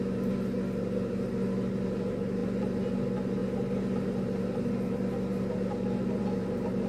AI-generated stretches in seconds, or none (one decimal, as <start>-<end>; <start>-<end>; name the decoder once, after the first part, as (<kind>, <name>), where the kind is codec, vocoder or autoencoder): none